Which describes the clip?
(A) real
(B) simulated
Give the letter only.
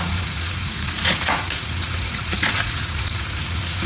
B